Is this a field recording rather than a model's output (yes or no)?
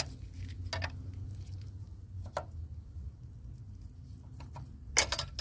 yes